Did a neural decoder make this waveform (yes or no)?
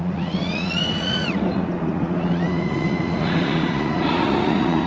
yes